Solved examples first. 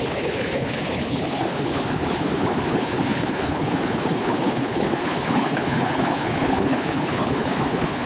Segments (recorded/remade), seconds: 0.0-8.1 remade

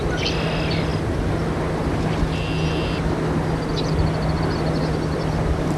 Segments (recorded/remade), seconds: 0.0-5.8 recorded

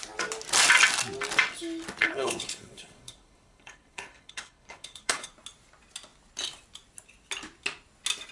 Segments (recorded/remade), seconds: 0.0-2.0 recorded; 2.0-5.3 remade; 5.3-8.3 recorded

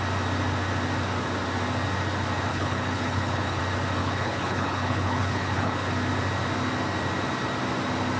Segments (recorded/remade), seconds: 0.0-2.5 recorded; 2.5-3.6 remade; 3.6-4.0 recorded; 4.0-5.9 remade; 5.9-8.2 recorded

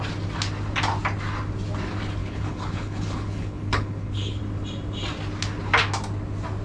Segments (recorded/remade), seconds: 0.0-2.2 recorded; 2.2-4.4 remade; 4.4-6.6 recorded

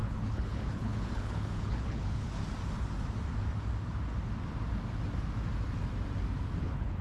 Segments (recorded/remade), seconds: 0.0-2.4 remade; 2.4-6.6 recorded; 6.6-7.0 remade

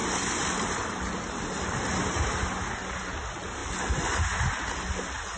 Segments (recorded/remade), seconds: 0.0-5.4 recorded